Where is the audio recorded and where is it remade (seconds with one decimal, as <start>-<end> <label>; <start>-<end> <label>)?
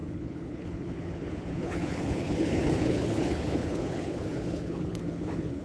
0.0-5.6 remade